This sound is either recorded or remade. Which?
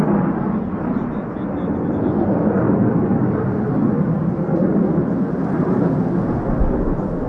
recorded